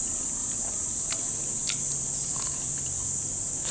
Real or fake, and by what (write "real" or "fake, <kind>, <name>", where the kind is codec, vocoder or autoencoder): real